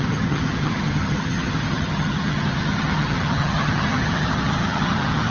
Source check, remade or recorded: remade